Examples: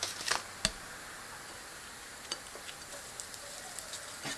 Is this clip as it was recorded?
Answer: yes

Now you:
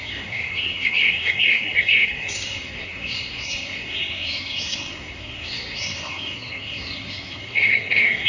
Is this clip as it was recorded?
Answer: no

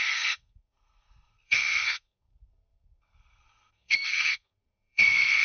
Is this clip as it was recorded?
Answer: no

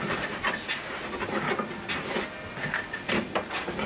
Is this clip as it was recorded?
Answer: yes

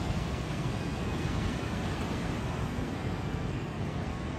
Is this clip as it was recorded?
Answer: no